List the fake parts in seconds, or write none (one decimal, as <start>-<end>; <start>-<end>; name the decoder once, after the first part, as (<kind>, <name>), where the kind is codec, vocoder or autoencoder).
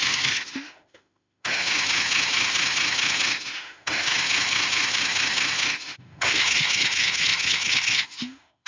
0.0-8.7 (autoencoder, DAC-VAE)